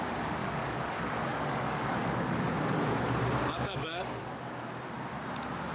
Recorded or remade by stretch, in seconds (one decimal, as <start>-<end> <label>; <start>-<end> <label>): 0.0-0.4 recorded; 0.4-2.8 remade; 2.8-3.4 recorded; 3.4-4.3 remade; 4.3-5.7 recorded